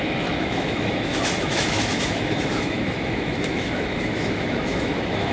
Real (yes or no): no